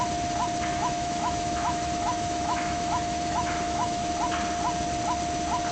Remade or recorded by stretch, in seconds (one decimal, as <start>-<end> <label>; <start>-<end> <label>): 0.0-0.7 recorded; 0.7-4.1 remade; 4.1-5.7 recorded